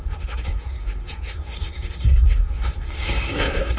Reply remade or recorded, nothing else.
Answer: remade